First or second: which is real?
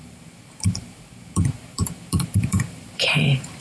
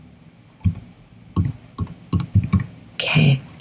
second